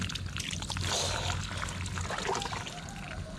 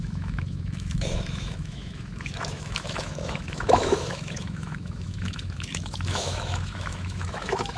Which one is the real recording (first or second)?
first